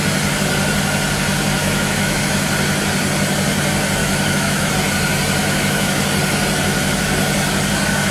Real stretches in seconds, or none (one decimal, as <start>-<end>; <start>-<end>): 0.0-1.6; 2.2-4.0; 4.7-5.4; 6.0-8.1